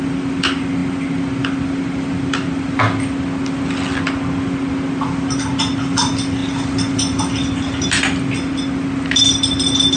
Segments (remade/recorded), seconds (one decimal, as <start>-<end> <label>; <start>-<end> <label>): 0.0-10.0 recorded